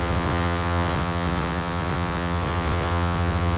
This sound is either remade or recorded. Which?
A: remade